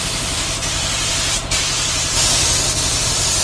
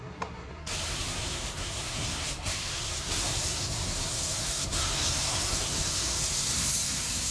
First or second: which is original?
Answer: first